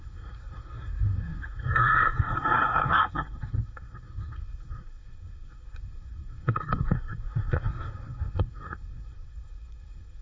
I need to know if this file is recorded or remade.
remade